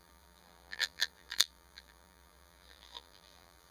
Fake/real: fake